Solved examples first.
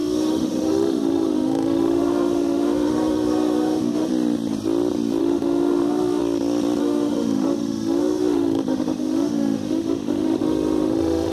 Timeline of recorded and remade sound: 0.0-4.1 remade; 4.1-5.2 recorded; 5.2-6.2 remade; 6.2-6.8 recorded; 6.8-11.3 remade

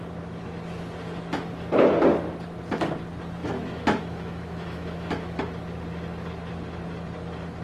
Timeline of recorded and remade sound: 0.0-3.4 recorded; 3.4-5.4 remade; 5.4-7.6 recorded

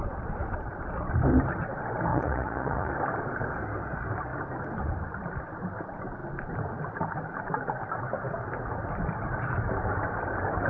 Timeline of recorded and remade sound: 0.0-2.1 recorded; 2.1-2.9 remade; 2.9-10.7 recorded

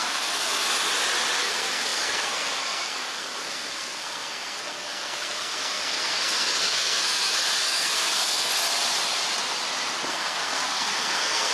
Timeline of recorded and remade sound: 0.0-0.7 remade; 0.7-1.4 recorded; 1.4-8.5 remade; 8.5-10.1 recorded; 10.1-11.5 remade

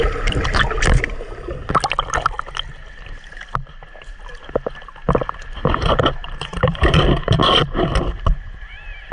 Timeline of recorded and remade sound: 0.0-6.2 recorded; 6.2-7.4 remade; 7.4-9.1 recorded